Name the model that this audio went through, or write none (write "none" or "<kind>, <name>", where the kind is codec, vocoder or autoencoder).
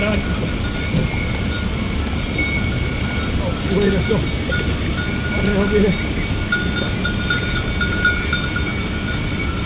none